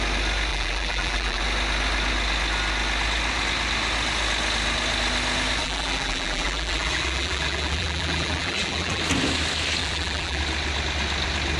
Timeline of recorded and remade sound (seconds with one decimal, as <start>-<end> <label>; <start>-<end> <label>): 0.0-0.5 recorded; 0.5-1.4 remade; 1.4-5.6 recorded; 5.6-9.0 remade; 9.0-9.8 recorded; 9.8-10.4 remade; 10.4-11.6 recorded